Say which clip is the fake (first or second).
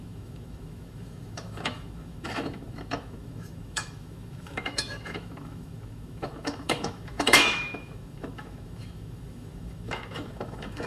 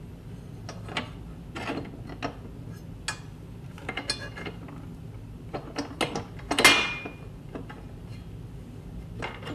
first